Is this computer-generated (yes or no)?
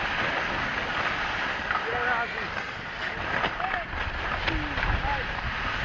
no